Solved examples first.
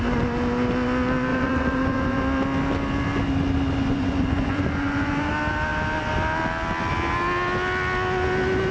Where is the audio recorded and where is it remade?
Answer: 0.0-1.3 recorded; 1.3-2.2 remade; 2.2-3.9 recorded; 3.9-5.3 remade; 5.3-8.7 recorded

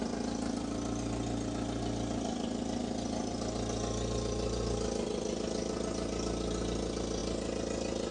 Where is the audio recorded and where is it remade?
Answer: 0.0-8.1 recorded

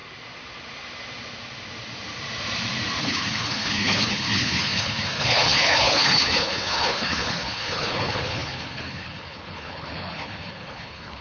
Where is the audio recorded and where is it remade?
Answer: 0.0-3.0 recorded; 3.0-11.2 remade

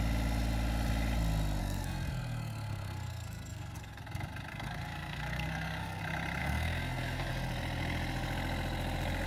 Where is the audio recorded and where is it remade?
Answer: 0.0-1.6 recorded; 1.6-4.0 remade; 4.0-4.5 recorded; 4.5-6.0 remade; 6.0-6.4 recorded; 6.4-7.3 remade; 7.3-9.3 recorded

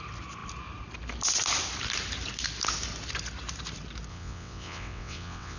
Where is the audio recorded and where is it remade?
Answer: 0.0-4.1 recorded; 4.1-5.6 remade

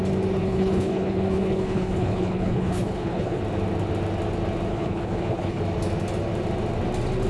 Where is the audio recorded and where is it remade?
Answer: 0.0-0.4 recorded; 0.4-3.4 remade; 3.4-4.7 recorded; 4.7-5.6 remade; 5.6-7.3 recorded